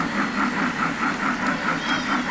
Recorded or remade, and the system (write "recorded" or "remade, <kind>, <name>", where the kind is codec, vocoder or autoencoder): recorded